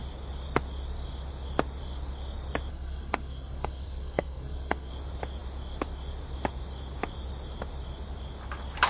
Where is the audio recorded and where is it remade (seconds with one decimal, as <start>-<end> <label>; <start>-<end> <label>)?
0.0-2.7 recorded; 2.7-4.9 remade; 4.9-8.9 recorded